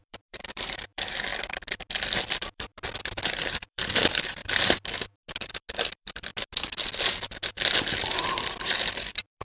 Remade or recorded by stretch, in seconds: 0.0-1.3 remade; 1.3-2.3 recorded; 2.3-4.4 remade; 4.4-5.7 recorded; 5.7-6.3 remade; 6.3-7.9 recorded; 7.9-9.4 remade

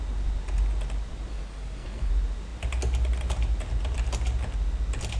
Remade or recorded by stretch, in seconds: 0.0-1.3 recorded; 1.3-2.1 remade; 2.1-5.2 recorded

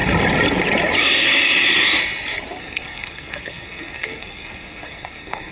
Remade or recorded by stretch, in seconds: 0.0-2.6 recorded; 2.6-5.5 remade

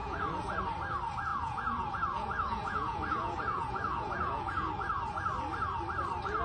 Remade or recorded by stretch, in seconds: 0.0-0.6 remade; 0.6-1.3 recorded; 1.3-4.7 remade; 4.7-6.4 recorded

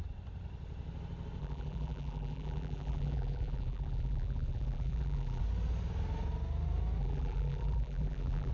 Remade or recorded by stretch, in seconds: 0.0-1.4 recorded; 1.4-5.4 remade; 5.4-7.0 recorded; 7.0-8.5 remade

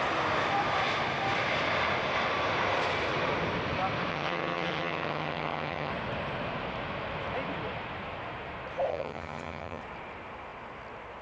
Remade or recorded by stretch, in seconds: 0.0-4.1 recorded; 4.1-5.9 remade; 5.9-8.9 recorded; 8.9-9.8 remade; 9.8-11.2 recorded

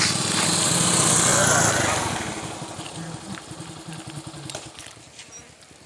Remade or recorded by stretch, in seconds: 0.0-5.9 recorded